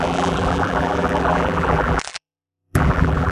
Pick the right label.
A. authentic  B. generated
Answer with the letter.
B